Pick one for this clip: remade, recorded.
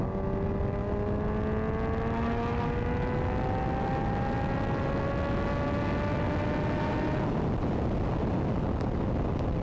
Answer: recorded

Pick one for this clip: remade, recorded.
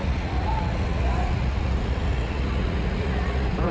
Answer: remade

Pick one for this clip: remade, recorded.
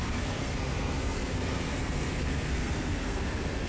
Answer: remade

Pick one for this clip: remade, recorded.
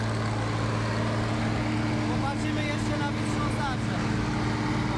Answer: recorded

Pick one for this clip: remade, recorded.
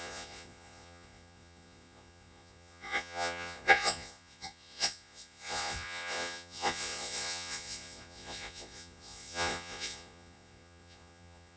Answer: remade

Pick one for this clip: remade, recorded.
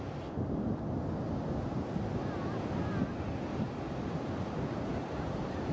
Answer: recorded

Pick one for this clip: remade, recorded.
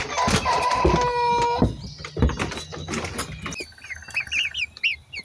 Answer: recorded